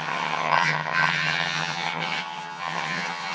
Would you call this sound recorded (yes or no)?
no